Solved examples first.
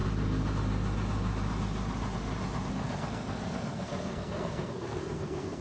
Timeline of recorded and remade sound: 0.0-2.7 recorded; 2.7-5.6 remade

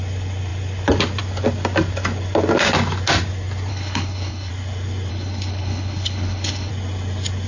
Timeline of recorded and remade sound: 0.0-3.7 recorded; 3.7-4.5 remade; 4.5-5.1 recorded; 5.1-6.7 remade; 6.7-7.5 recorded